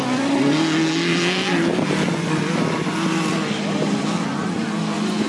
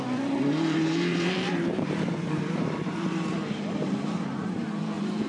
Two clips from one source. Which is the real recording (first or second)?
first